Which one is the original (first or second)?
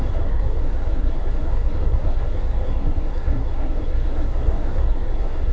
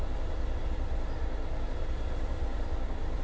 second